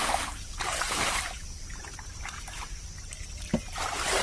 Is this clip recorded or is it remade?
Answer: remade